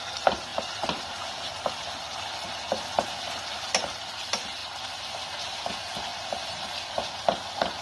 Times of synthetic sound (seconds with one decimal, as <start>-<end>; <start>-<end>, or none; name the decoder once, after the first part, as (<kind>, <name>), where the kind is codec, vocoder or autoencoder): 0.5-1.7 (vocoder, BigVGAN v2); 6.1-6.8